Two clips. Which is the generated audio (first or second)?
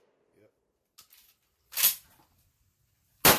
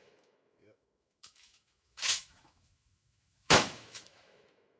second